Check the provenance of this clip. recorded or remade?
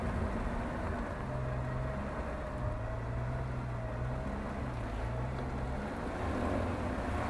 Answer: recorded